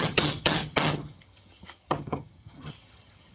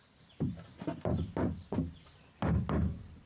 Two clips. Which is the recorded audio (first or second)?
second